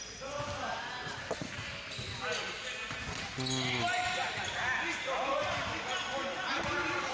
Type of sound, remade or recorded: recorded